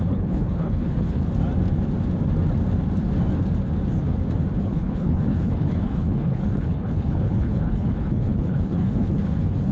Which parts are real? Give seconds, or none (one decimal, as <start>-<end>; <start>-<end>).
1.2-4.6